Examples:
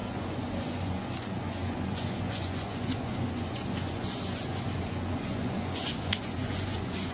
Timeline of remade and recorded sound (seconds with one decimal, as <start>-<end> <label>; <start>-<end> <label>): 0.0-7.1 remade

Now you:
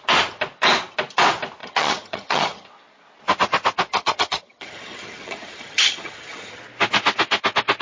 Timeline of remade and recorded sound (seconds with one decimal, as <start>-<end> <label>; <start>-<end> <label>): 0.0-1.6 recorded; 1.6-2.7 remade; 2.7-3.9 recorded; 3.9-6.6 remade; 6.6-7.8 recorded

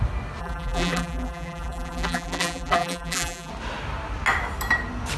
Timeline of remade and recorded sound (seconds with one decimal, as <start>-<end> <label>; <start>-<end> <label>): 0.0-0.4 recorded; 0.4-3.5 remade; 3.5-5.2 recorded

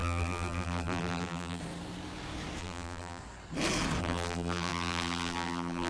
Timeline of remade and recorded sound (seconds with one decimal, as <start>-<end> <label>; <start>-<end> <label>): 0.0-1.6 remade; 1.6-2.6 recorded; 2.6-3.2 remade; 3.2-4.0 recorded; 4.0-5.9 remade